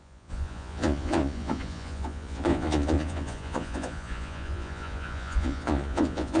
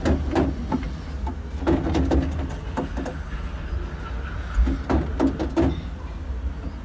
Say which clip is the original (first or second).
second